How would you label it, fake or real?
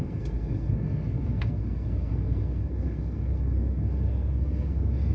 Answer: fake